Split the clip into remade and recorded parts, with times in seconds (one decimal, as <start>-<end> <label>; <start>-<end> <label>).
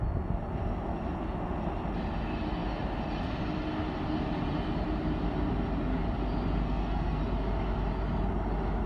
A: 0.0-6.6 recorded; 6.6-7.2 remade; 7.2-8.9 recorded